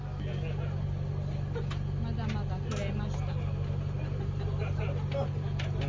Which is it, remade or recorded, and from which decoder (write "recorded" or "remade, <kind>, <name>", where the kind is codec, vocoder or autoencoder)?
recorded